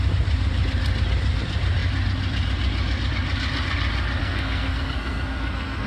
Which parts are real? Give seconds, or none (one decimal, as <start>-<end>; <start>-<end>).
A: 0.0-4.2